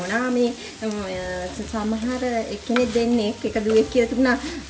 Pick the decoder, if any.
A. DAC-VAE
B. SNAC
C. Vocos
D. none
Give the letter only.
D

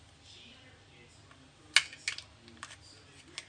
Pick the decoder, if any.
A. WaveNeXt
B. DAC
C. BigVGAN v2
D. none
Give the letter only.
D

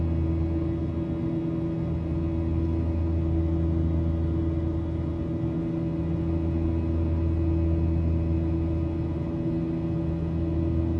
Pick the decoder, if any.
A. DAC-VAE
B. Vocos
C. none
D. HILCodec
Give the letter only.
C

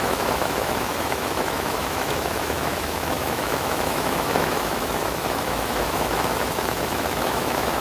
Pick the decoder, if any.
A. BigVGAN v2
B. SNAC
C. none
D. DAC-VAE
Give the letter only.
D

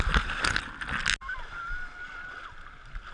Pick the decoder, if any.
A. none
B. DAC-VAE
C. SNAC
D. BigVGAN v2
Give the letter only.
A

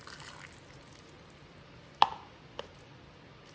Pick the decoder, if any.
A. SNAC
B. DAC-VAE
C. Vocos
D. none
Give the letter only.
D